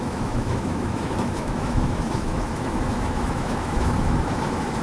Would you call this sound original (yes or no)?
no